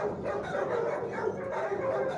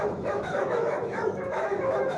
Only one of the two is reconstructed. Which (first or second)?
second